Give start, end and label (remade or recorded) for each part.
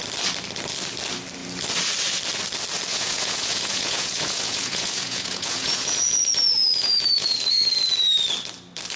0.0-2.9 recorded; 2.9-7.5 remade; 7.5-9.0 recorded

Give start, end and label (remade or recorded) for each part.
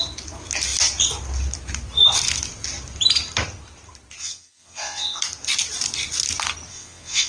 0.0-4.2 recorded; 4.2-5.2 remade; 5.2-6.7 recorded; 6.7-7.3 remade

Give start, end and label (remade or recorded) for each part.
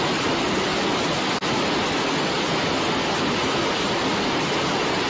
0.0-5.1 recorded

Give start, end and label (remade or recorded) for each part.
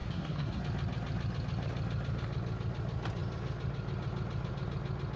0.0-0.6 remade; 0.6-5.2 recorded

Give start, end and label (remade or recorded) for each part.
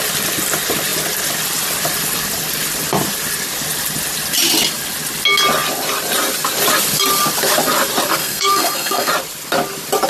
0.0-8.2 recorded; 8.2-9.1 remade; 9.1-10.1 recorded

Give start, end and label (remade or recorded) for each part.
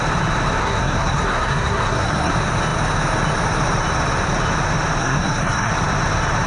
0.0-0.6 recorded; 0.6-2.3 remade; 2.3-5.0 recorded; 5.0-5.7 remade; 5.7-6.5 recorded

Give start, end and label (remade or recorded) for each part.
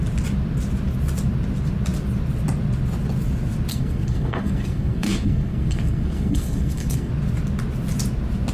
0.0-3.7 recorded; 3.7-7.1 remade; 7.1-8.5 recorded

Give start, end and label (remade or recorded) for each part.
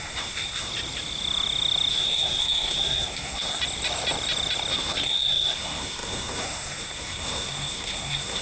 0.0-0.7 remade; 0.7-1.9 recorded; 1.9-3.6 remade; 3.6-4.7 recorded; 4.7-8.4 remade